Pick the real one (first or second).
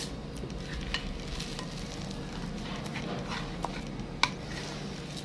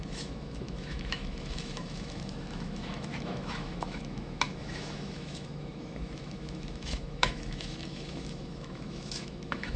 first